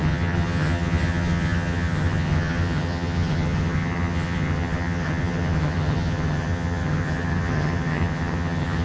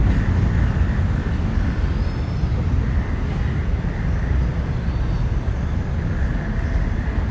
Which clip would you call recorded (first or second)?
second